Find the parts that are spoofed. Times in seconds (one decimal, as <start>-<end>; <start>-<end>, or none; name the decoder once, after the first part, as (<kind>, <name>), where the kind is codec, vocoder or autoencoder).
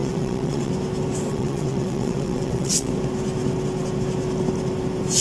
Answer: 0.0-0.7 (vocoder, WaveNeXt); 1.3-2.9